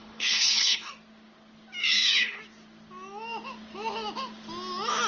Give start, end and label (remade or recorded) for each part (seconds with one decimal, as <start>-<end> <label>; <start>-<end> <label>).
0.0-0.9 remade; 0.9-1.8 recorded; 1.8-2.4 remade; 2.4-5.1 recorded